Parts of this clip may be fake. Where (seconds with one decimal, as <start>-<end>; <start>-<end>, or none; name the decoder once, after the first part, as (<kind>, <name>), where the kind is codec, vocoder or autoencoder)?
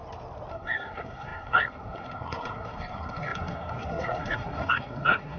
0.5-5.4 (codec, SNAC)